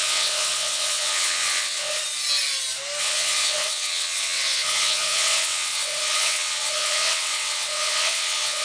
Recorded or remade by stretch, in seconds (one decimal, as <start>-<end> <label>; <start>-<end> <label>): 0.0-2.0 remade; 2.0-3.0 recorded; 3.0-8.6 remade